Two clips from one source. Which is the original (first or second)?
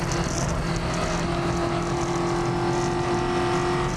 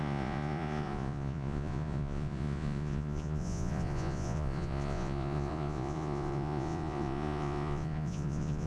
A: first